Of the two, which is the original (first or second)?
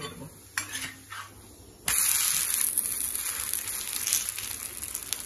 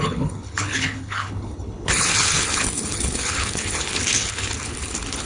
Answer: first